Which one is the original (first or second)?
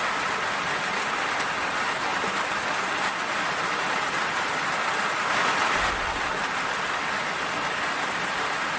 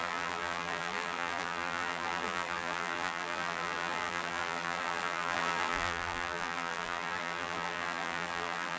first